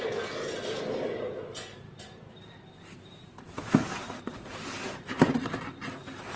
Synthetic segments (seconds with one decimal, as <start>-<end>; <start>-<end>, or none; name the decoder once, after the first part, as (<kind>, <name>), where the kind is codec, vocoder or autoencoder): 1.7-5.5 (vocoder, BigVGAN v2)